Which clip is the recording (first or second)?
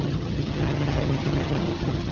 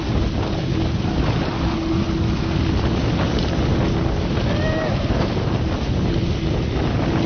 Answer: second